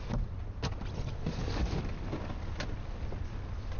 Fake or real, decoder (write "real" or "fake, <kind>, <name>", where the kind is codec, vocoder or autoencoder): real